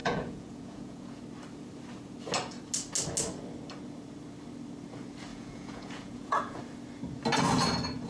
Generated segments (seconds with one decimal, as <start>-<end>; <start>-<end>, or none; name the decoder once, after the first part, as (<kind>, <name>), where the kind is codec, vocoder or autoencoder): 0.0-1.2 (vocoder, Vocos); 5.3-6.6